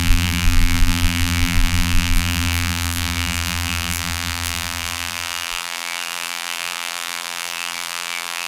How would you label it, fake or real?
fake